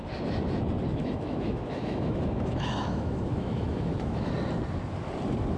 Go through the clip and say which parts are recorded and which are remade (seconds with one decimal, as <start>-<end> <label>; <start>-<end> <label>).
0.0-0.9 recorded; 0.9-4.3 remade; 4.3-5.6 recorded